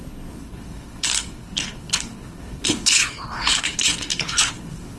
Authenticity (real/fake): fake